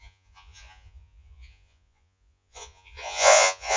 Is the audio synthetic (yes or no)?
yes